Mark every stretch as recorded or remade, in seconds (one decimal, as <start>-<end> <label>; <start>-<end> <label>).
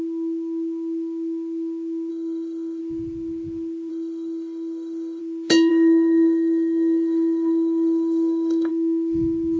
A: 0.0-2.1 recorded; 2.1-2.8 remade; 2.8-3.9 recorded; 3.9-5.2 remade; 5.2-5.7 recorded; 5.7-8.7 remade; 8.7-9.6 recorded